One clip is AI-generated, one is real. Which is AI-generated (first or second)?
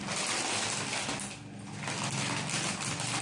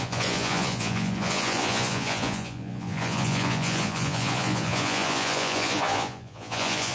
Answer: second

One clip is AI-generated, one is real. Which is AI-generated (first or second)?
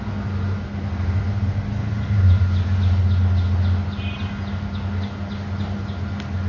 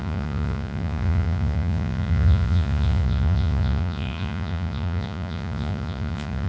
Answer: second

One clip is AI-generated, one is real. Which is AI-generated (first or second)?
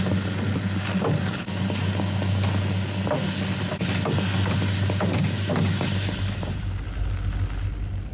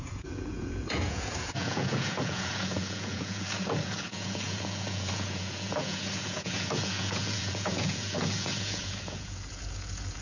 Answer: second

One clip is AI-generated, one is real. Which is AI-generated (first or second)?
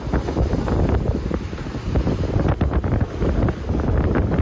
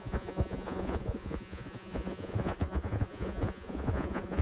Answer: second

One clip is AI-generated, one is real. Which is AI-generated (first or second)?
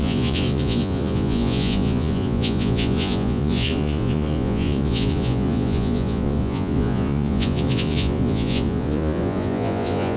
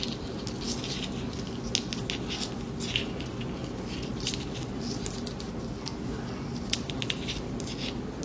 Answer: first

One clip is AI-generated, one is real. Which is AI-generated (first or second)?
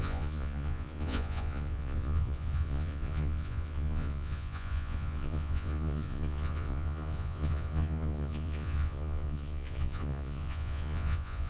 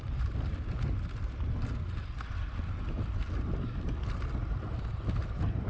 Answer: first